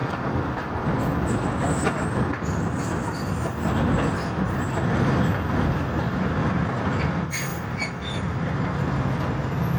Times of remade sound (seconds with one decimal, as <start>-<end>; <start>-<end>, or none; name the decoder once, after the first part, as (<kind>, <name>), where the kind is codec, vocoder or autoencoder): 0.0-0.6 (codec, DAC)